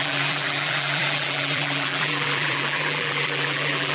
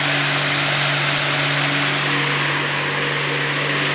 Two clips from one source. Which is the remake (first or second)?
first